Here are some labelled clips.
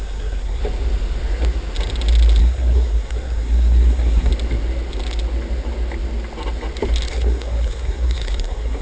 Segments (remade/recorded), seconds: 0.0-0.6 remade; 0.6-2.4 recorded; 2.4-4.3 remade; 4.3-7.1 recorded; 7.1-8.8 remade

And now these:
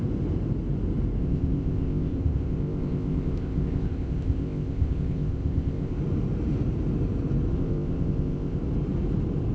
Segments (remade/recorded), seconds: 0.0-1.2 recorded; 1.2-6.0 remade; 6.0-7.5 recorded; 7.5-8.6 remade; 8.6-9.5 recorded

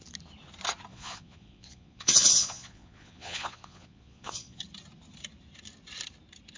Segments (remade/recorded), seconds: 0.0-0.9 recorded; 0.9-4.6 remade; 4.6-6.6 recorded

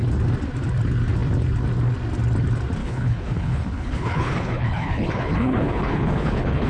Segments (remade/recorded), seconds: 0.0-2.8 recorded; 2.8-6.7 remade

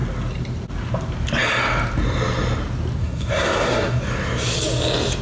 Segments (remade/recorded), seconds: 0.0-3.0 recorded; 3.0-4.0 remade; 4.0-5.2 recorded

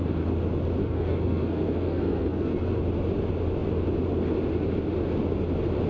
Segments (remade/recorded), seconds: 0.0-0.8 recorded; 0.8-2.8 remade; 2.8-5.9 recorded

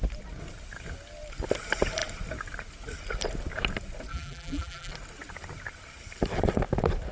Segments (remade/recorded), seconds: 0.0-4.1 recorded; 4.1-4.9 remade; 4.9-7.1 recorded